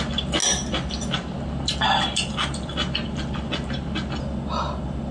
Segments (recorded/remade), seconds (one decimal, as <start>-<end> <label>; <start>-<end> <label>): 0.0-5.1 recorded